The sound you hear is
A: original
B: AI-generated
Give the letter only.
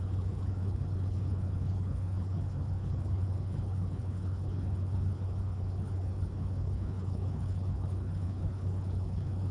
B